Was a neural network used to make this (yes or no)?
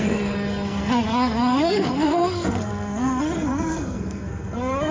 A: yes